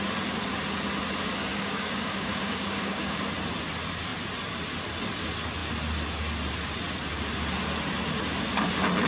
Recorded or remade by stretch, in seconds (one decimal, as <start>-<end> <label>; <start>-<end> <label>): 0.0-1.5 recorded; 1.5-3.2 remade; 3.2-9.1 recorded